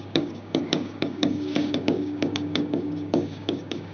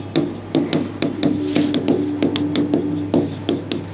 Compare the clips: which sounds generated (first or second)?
first